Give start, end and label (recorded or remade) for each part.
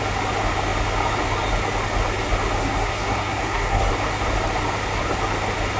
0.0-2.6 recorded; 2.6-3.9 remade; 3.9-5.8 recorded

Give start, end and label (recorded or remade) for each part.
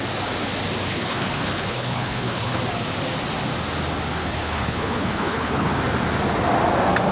0.0-0.9 recorded; 0.9-2.6 remade; 2.6-4.2 recorded; 4.2-5.8 remade; 5.8-7.1 recorded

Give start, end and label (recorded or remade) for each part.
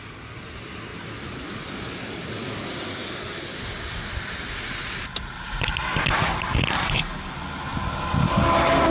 0.0-8.9 recorded